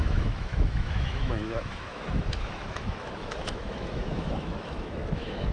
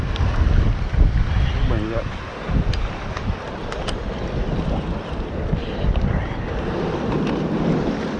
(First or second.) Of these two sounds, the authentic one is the second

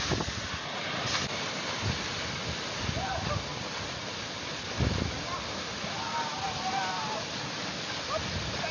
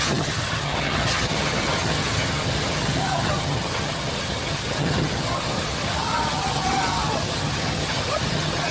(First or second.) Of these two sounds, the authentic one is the first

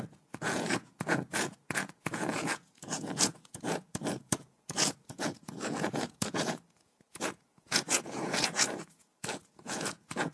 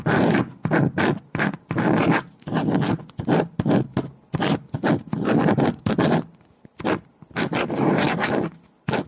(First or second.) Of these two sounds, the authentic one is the second